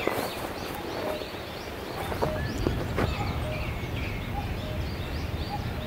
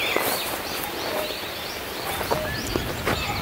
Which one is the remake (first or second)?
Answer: first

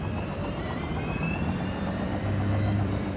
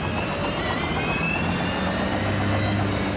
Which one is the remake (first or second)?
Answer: first